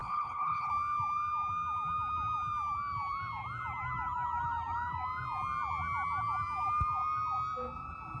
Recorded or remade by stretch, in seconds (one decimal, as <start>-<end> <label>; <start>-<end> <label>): 0.0-0.7 remade; 0.7-8.2 recorded